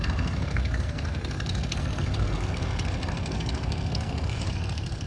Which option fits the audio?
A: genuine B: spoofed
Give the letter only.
B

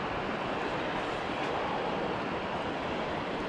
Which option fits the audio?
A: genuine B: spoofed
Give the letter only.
A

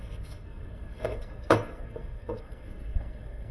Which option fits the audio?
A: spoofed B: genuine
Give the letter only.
A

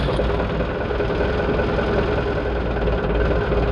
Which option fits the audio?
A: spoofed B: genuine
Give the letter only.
B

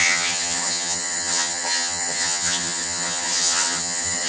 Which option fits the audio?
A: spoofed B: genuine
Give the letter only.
A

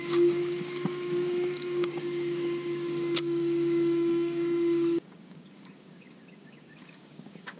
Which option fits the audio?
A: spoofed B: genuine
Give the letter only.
A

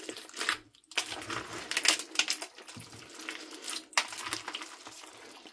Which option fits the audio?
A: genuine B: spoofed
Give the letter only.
A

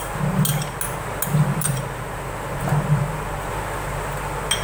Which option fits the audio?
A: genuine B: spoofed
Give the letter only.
A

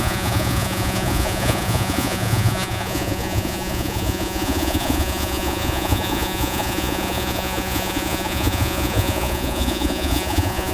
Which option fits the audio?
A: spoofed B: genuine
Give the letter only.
A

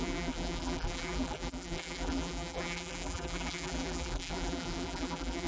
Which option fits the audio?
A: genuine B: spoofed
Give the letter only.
B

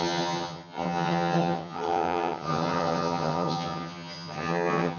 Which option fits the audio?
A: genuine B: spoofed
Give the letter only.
B